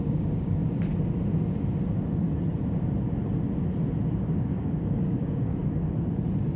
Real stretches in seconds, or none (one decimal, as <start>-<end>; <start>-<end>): 0.6-4.2; 5.6-6.6